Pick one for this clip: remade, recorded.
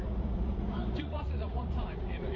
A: remade